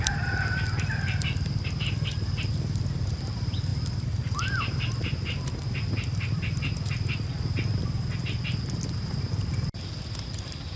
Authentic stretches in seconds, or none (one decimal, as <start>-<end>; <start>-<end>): 3.7-4.2

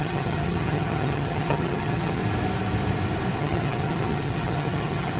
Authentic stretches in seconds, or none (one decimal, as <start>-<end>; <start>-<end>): 2.2-3.4

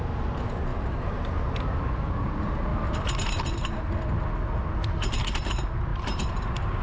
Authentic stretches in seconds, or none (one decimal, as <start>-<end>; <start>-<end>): 0.0-0.7; 1.4-5.9

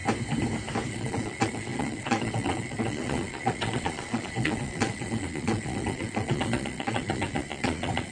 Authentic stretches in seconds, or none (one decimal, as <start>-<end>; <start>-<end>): 0.0-0.9